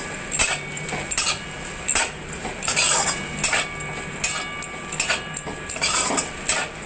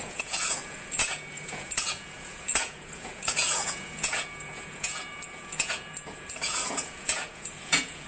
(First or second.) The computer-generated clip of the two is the second